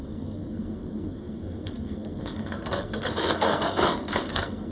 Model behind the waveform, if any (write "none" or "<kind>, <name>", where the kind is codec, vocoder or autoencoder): codec, SNAC